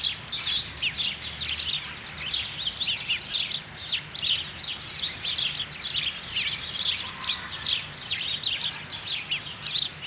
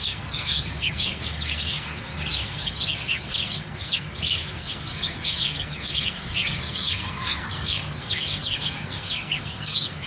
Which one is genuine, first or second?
first